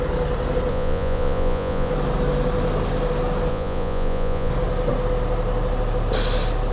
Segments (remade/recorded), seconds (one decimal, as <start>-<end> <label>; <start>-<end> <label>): 0.0-0.7 recorded; 0.7-1.9 remade; 1.9-3.5 recorded; 3.5-4.5 remade; 4.5-6.7 recorded